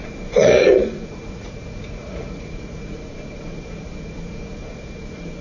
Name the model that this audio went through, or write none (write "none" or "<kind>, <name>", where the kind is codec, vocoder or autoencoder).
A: vocoder, Vocos